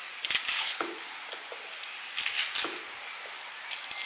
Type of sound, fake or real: real